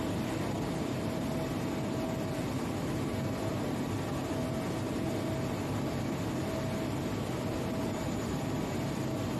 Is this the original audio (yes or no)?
yes